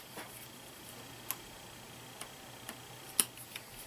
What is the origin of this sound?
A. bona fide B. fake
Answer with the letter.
A